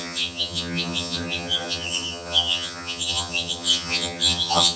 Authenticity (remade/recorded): remade